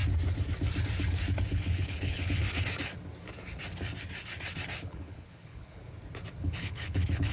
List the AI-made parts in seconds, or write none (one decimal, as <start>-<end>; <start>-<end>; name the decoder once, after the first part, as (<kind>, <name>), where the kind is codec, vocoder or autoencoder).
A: 1.5-2.4 (codec, HILCodec); 4.8-5.8; 6.4-7.3